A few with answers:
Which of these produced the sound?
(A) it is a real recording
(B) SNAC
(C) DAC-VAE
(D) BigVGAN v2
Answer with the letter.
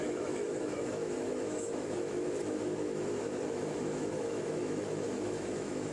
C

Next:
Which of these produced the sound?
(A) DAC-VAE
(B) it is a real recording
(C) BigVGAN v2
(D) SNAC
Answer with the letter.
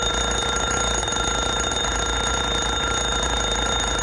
B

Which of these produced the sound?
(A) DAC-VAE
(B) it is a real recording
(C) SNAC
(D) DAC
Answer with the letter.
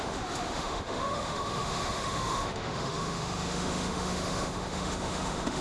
A